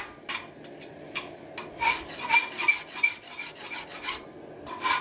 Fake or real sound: real